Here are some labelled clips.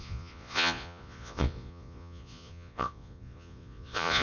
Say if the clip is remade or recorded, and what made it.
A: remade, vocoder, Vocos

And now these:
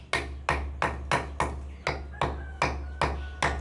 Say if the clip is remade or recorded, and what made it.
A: recorded